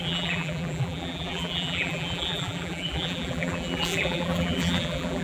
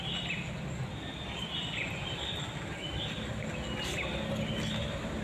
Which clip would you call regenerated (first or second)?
first